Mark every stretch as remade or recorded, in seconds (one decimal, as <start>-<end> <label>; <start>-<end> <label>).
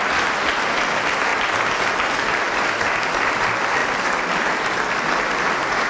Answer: 0.0-5.9 recorded